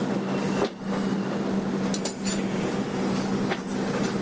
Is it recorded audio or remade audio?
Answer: recorded